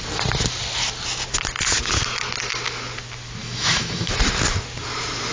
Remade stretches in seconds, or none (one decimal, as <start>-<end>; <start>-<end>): 3.4-4.1